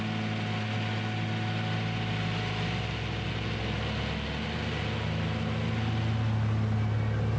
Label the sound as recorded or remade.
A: recorded